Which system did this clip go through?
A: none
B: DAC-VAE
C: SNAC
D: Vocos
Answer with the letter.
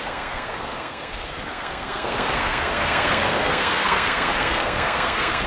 C